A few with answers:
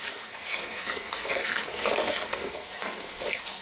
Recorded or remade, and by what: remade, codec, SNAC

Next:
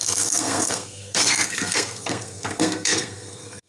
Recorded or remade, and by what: remade, codec, SNAC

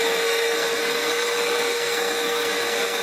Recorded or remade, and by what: remade, codec, SNAC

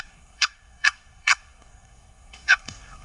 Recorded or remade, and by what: remade, codec, SNAC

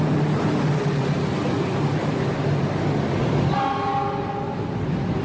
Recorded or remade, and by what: recorded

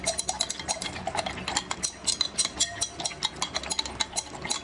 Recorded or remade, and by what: recorded